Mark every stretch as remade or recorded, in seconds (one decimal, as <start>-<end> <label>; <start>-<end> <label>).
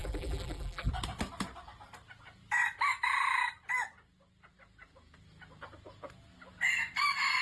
0.0-0.9 remade; 0.9-7.4 recorded